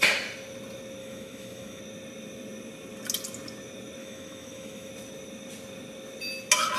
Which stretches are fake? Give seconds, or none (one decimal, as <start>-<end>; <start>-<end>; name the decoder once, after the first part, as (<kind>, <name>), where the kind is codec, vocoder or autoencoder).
1.0-1.8 (autoencoder, DAC-VAE); 4.0-4.9